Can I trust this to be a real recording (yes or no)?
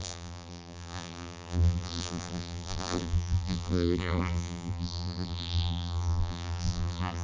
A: no